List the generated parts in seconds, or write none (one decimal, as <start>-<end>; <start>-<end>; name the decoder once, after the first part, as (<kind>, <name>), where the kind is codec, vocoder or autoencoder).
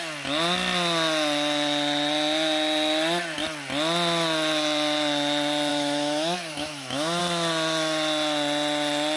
5.7-7.2 (autoencoder, DAC-VAE)